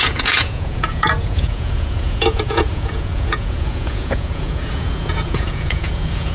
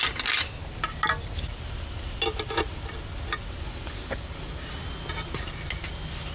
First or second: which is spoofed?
first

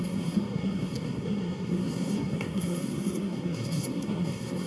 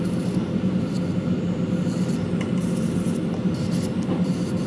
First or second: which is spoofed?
first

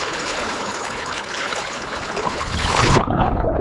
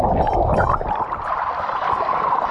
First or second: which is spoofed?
first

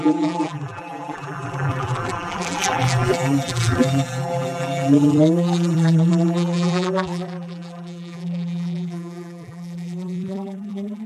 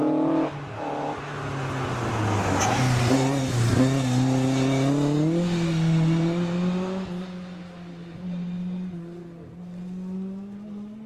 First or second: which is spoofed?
first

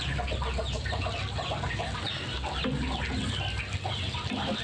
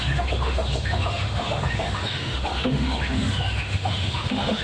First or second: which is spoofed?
second